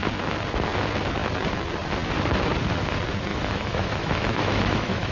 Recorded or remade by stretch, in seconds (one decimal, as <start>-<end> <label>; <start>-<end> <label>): 0.0-3.3 recorded; 3.3-5.1 remade